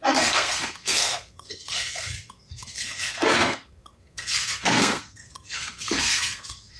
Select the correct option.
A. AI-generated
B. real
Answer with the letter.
A